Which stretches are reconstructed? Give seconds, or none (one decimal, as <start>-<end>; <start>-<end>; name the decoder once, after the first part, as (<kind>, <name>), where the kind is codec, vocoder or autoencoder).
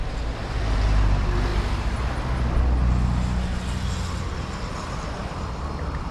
0.0-1.5 (vocoder, BigVGAN v2); 4.3-6.1